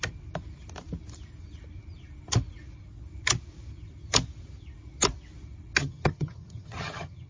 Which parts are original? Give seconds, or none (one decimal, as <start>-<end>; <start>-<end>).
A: 0.0-5.8